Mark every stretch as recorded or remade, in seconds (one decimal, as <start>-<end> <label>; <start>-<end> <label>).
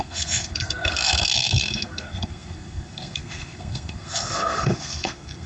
0.0-5.5 remade